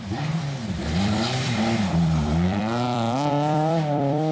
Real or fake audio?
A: fake